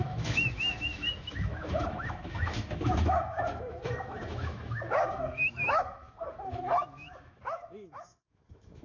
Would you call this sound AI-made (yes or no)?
yes